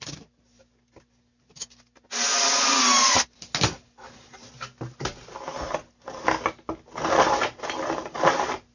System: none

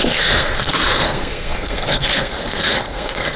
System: codec, SNAC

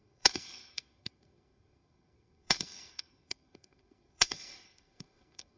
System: codec, SNAC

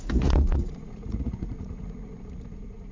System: vocoder, Vocos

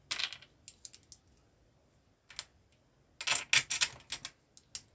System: none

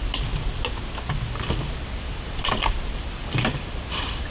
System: none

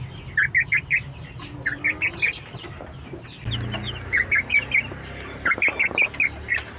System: none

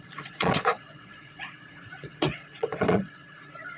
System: vocoder, Vocos